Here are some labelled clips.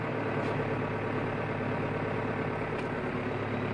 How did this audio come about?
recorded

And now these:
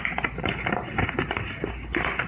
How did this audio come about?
recorded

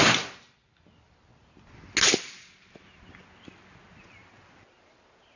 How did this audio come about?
recorded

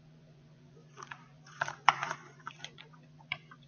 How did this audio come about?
remade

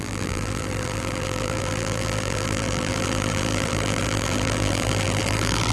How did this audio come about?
remade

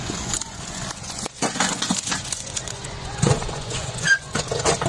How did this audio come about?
remade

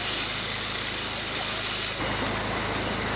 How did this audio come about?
recorded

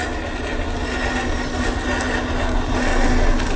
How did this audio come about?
recorded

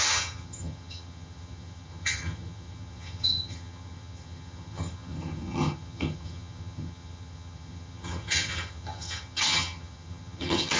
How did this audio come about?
remade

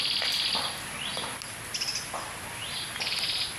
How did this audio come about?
recorded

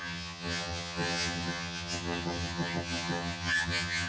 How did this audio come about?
remade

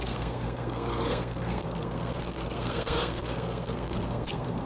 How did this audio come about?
remade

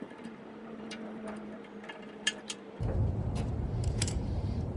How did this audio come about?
remade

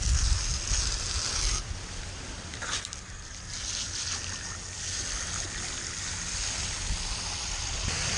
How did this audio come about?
recorded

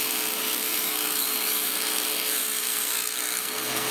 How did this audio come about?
remade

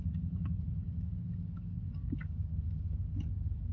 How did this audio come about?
remade